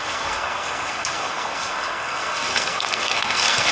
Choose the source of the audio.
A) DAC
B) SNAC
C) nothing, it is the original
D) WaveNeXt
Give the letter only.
B